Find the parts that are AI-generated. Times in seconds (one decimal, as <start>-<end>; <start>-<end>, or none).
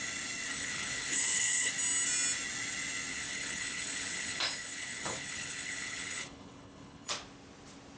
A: 0.5-1.7; 3.1-7.1